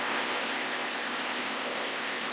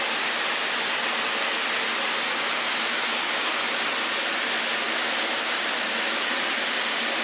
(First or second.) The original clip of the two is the second